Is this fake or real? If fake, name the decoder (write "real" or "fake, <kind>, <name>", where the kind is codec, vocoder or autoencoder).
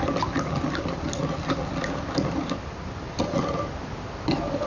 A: real